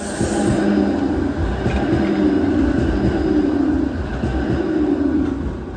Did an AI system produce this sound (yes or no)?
no